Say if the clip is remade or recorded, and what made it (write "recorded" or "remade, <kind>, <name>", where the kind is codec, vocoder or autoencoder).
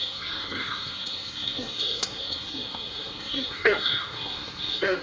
remade, codec, SNAC